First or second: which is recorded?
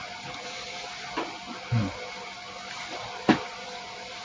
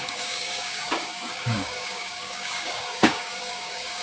first